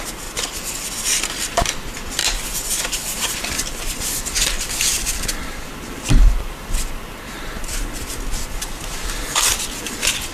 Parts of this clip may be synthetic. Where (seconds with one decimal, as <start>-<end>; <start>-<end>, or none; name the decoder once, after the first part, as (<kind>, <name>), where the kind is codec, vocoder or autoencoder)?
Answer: 2.2-7.2 (vocoder, BigVGAN v2)